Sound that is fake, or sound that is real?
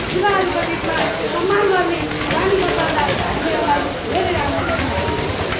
real